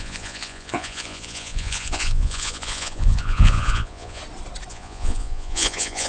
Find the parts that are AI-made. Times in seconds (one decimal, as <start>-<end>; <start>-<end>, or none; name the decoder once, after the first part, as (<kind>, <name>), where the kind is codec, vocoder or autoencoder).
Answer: 0.0-4.2 (vocoder, Vocos); 4.7-6.1